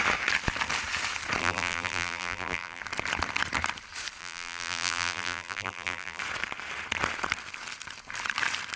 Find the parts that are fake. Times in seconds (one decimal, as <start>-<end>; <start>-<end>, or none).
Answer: 1.4-2.8; 4.2-6.2